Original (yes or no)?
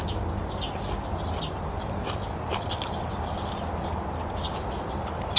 yes